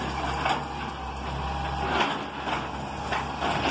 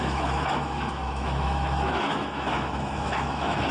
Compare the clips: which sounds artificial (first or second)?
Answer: second